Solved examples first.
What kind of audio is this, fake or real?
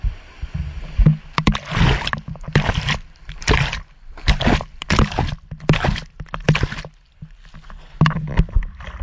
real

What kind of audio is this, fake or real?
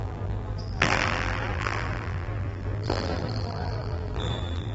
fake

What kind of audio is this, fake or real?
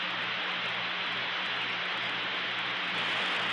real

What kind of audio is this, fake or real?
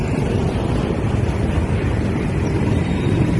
real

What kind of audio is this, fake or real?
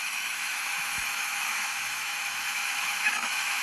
fake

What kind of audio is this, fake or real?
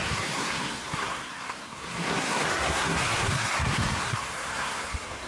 fake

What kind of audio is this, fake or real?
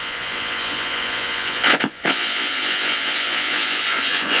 fake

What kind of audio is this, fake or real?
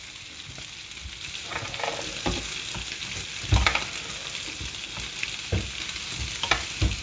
real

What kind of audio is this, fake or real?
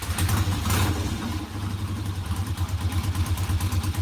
fake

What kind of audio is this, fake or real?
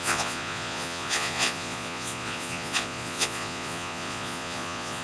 fake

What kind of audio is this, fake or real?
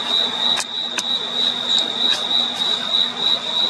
real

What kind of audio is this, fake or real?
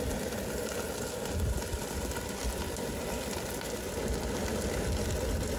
real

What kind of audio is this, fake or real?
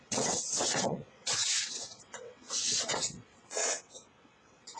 fake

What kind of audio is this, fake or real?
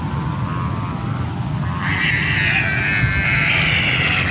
real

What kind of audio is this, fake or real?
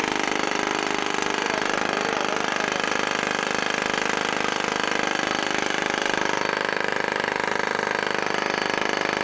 real